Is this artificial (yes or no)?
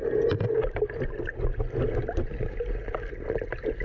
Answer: no